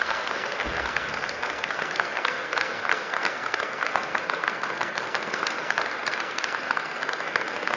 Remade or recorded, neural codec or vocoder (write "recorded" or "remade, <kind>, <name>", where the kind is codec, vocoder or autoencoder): remade, codec, SNAC